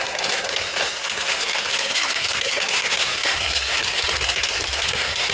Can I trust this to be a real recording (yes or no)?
no